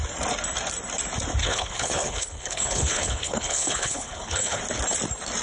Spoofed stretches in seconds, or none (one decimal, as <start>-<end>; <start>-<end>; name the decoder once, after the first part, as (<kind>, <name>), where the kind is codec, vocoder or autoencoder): 1.4-4.6 (codec, HILCodec)